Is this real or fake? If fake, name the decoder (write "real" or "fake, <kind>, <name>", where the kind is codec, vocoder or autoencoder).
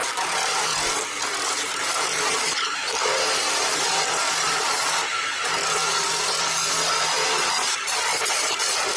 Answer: fake, vocoder, BigVGAN v2